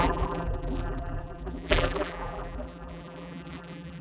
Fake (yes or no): yes